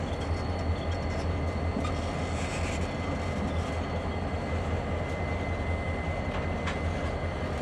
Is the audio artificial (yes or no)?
no